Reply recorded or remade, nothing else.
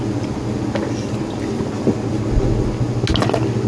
recorded